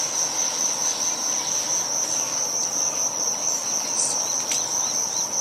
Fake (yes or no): no